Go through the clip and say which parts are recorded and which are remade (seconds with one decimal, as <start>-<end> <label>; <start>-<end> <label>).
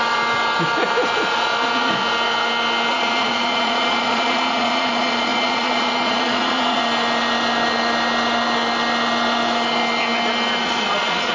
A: 0.0-2.9 recorded; 2.9-6.8 remade; 6.8-10.6 recorded; 10.6-11.3 remade